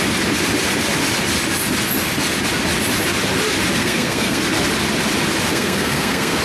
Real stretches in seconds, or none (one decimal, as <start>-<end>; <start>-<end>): 0.0-3.8; 4.4-5.5